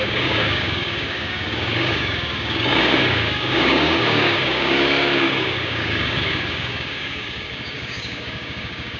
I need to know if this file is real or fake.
fake